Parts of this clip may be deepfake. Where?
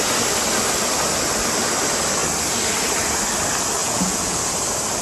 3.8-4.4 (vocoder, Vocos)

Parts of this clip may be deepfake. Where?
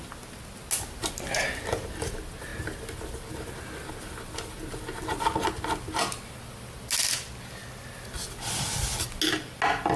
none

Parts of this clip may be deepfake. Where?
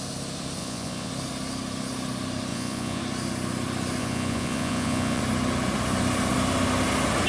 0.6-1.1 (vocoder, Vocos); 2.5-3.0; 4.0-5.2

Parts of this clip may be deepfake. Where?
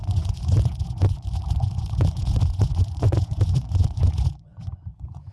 0.0-5.3 (vocoder, Vocos)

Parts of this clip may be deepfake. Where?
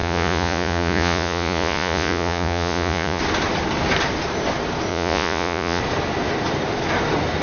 0.0-3.2 (vocoder, Vocos); 4.9-5.8